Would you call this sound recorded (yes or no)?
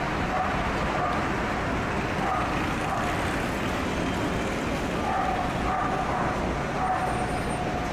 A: yes